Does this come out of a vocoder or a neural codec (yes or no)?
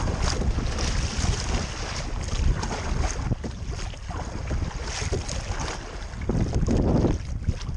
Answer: no